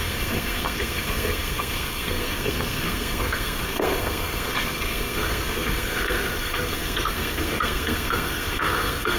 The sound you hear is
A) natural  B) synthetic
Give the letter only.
B